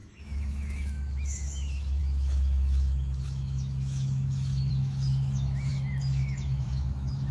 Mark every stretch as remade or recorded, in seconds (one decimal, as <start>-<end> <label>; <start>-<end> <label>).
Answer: 0.0-7.3 remade